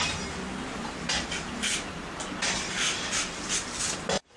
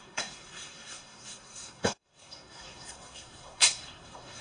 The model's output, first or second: second